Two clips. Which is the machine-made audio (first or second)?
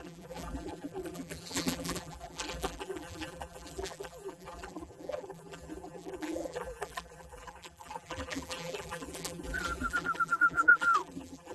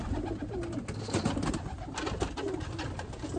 first